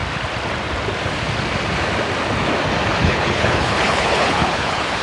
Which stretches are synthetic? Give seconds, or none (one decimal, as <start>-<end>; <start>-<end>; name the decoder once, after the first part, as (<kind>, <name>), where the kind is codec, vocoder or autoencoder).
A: 3.0-5.0 (codec, HILCodec)